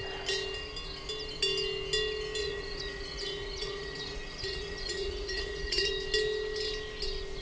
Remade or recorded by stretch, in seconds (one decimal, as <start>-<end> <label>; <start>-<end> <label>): 0.0-2.4 recorded; 2.4-5.9 remade; 5.9-7.4 recorded